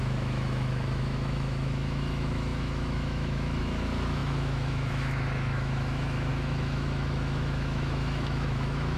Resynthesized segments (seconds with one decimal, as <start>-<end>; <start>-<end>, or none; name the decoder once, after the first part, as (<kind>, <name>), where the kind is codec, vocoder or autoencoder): 0.0-9.0 (autoencoder, DAC-VAE)